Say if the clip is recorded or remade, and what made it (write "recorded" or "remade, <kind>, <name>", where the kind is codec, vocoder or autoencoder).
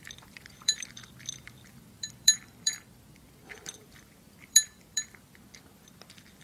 remade, vocoder, BigVGAN v2